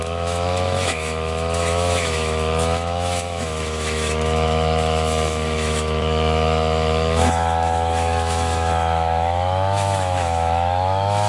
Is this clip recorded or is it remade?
remade